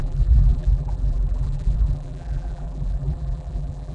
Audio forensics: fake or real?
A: fake